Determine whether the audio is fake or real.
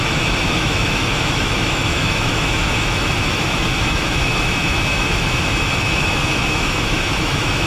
fake